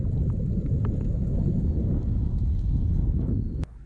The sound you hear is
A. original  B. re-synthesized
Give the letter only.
A